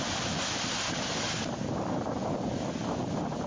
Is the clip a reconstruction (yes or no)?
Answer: no